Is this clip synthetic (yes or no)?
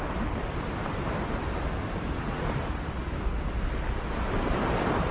no